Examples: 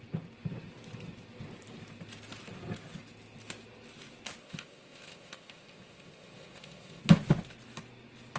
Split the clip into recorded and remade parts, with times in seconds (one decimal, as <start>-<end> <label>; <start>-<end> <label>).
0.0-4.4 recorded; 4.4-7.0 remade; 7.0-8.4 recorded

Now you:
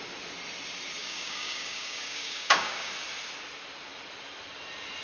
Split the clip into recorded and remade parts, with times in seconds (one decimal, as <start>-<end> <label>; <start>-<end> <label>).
0.0-1.0 recorded; 1.0-2.9 remade; 2.9-5.0 recorded

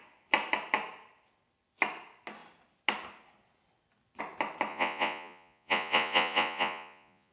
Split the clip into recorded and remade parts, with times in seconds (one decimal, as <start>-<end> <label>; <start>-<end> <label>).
0.0-4.7 recorded; 4.7-7.3 remade

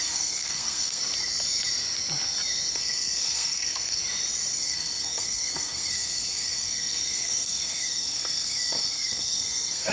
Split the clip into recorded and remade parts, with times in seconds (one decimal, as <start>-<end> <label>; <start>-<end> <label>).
0.0-1.0 remade; 1.0-2.7 recorded; 2.7-4.0 remade; 4.0-4.6 recorded; 4.6-9.9 remade

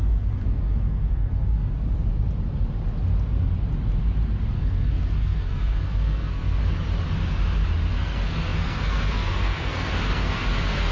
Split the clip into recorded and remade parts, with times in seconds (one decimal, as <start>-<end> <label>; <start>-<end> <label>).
0.0-1.7 remade; 1.7-4.5 recorded; 4.5-6.6 remade; 6.6-7.9 recorded; 7.9-10.9 remade

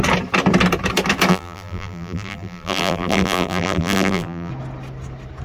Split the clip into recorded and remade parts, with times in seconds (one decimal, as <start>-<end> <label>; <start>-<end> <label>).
0.0-1.3 recorded; 1.3-4.5 remade; 4.5-5.4 recorded

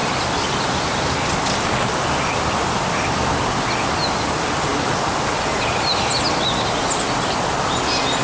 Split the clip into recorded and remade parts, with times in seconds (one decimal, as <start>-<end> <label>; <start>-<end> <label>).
0.0-8.2 recorded

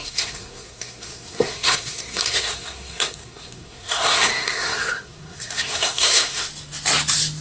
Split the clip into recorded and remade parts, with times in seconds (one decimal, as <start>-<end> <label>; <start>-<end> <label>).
0.0-6.5 remade; 6.5-7.4 recorded